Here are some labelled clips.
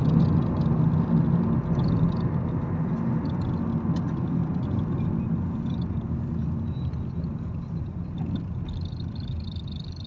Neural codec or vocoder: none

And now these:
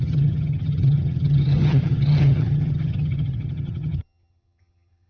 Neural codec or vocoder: vocoder, HiFi-GAN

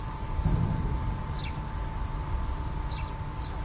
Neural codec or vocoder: none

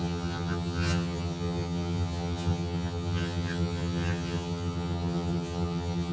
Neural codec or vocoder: vocoder, HiFi-GAN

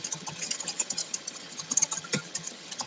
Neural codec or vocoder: vocoder, HiFi-GAN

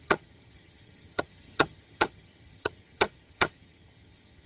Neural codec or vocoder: vocoder, HiFi-GAN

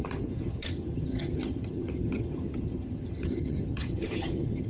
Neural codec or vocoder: vocoder, HiFi-GAN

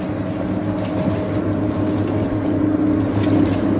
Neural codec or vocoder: none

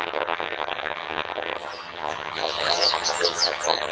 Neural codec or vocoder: vocoder, HiFi-GAN